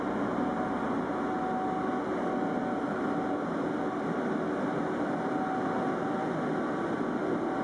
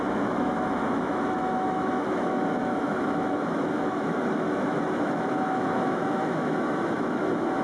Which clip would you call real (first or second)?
first